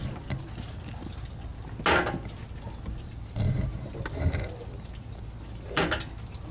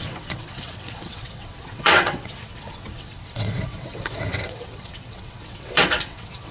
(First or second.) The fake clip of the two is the second